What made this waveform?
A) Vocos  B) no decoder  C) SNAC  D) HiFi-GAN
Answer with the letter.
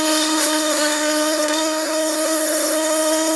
C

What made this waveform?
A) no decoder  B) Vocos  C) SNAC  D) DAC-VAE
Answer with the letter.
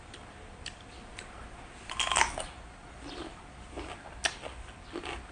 A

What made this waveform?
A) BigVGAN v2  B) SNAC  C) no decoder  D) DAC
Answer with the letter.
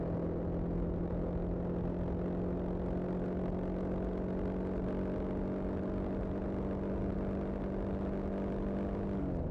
C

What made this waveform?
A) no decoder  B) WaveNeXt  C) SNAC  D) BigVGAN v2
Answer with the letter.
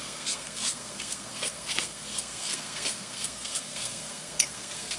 C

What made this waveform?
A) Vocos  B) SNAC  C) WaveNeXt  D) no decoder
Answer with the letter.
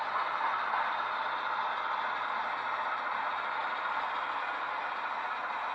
D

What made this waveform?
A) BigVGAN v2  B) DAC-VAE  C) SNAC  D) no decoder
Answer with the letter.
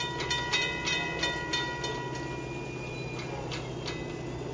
D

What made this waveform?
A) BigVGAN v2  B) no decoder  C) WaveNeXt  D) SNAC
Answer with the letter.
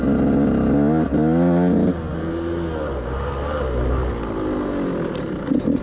B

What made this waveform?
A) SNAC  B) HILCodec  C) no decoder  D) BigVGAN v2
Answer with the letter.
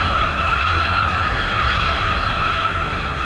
A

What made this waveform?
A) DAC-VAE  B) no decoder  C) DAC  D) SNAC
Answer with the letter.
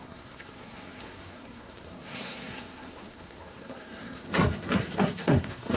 D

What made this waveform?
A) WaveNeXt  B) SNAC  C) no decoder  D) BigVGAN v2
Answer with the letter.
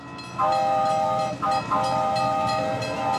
C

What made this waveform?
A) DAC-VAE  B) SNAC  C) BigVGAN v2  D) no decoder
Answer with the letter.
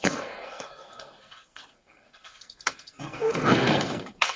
B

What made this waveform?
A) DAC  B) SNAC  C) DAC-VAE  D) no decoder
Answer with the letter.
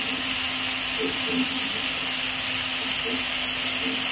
D